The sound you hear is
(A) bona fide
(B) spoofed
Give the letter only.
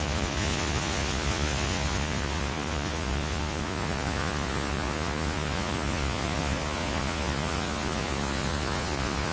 B